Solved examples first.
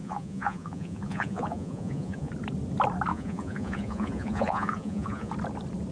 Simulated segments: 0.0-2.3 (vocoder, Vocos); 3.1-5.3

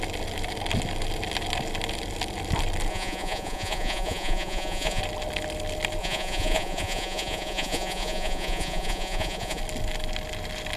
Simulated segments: 2.9-5.0 (vocoder, Vocos); 6.0-9.6

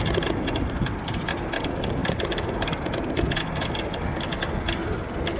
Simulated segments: none

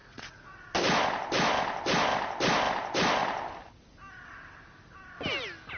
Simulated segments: 0.0-0.6 (vocoder, Vocos)

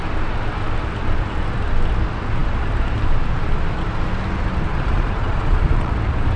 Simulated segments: 4.7-5.9 (vocoder, Vocos)

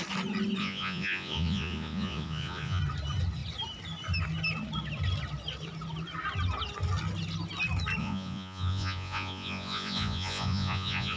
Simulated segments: 0.6-2.8 (vocoder, Vocos); 8.0-11.2

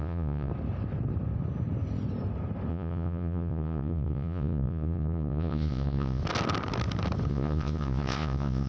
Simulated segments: 0.0-0.5 (vocoder, Vocos); 2.7-6.2; 7.3-8.7

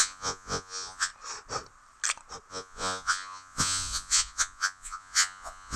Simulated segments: 0.0-1.1 (vocoder, Vocos); 2.5-5.8